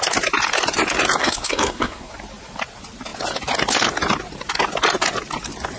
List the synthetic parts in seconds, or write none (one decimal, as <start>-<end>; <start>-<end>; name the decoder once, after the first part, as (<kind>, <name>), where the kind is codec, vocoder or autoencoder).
1.2-2.1 (codec, SNAC)